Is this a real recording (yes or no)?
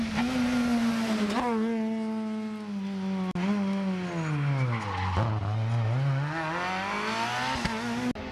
yes